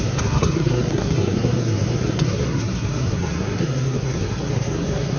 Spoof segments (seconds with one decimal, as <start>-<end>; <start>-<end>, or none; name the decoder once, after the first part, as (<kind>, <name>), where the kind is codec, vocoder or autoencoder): 0.0-5.2 (codec, SNAC)